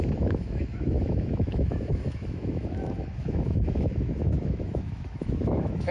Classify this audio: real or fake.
fake